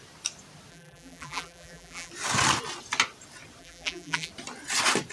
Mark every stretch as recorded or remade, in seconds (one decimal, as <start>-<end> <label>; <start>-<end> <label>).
0.0-0.7 recorded; 0.7-2.1 remade; 2.1-3.6 recorded; 3.6-4.3 remade; 4.3-5.1 recorded